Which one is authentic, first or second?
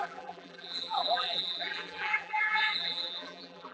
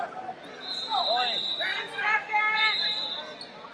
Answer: second